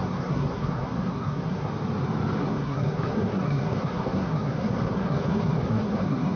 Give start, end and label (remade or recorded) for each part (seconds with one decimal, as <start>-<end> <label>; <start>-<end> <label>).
0.0-1.7 remade; 1.7-2.4 recorded; 2.4-6.4 remade